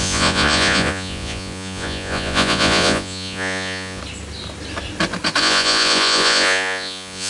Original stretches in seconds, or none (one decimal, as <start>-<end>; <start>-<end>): 4.0-5.4